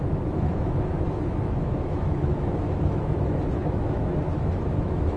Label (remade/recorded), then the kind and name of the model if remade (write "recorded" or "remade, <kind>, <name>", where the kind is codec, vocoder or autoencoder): remade, autoencoder, DAC-VAE